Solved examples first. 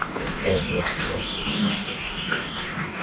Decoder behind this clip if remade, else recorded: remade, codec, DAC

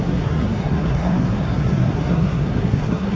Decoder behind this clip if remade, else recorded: remade, codec, SNAC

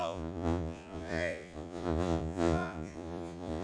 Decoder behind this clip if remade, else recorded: remade, vocoder, Vocos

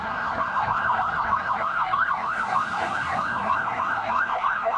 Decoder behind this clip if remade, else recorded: remade, codec, SNAC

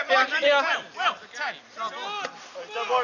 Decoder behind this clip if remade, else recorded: recorded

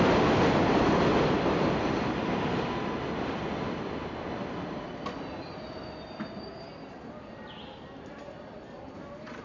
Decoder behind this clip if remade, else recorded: recorded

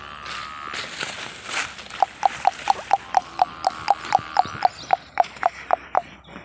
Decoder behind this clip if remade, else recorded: recorded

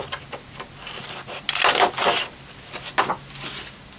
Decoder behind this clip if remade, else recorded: recorded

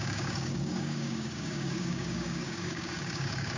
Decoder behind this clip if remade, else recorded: remade, codec, DAC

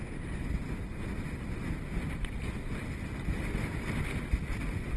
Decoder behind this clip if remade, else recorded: recorded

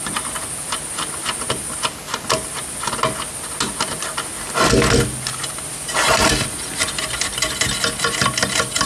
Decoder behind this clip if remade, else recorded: recorded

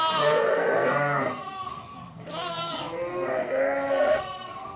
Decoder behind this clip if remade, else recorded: remade, codec, SNAC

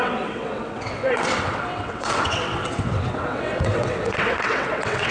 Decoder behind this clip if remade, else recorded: remade, vocoder, WaveNeXt